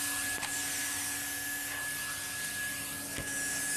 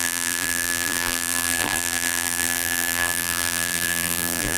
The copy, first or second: second